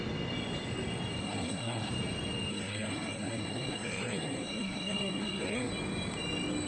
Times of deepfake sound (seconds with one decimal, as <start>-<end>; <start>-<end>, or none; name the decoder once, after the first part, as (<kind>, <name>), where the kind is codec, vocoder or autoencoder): 1.2-1.9 (codec, SNAC); 2.5-5.7